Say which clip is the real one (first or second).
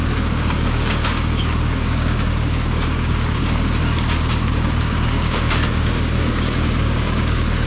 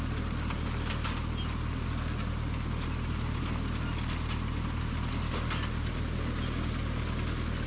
second